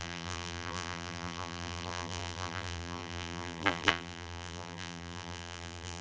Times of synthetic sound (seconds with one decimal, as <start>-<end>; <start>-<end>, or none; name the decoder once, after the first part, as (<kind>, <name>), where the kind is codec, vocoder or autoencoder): 0.0-6.0 (vocoder, BigVGAN v2)